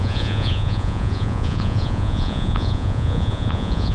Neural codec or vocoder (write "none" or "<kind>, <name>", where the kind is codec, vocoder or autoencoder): vocoder, Vocos